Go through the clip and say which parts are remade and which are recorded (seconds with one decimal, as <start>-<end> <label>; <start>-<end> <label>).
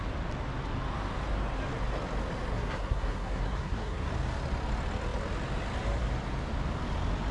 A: 0.0-2.5 recorded; 2.5-4.1 remade; 4.1-7.3 recorded